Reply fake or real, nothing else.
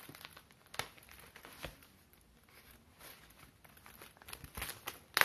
real